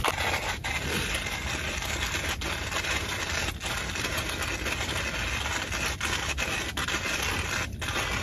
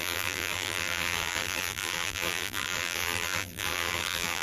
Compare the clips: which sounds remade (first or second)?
second